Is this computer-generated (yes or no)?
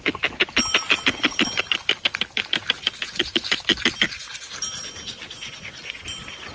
no